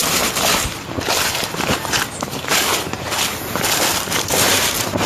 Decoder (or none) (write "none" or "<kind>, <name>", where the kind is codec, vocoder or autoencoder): vocoder, BigVGAN v2